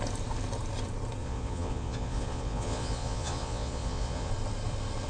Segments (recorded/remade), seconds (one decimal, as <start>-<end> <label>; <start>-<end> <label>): 0.0-1.2 recorded; 1.2-4.3 remade; 4.3-5.1 recorded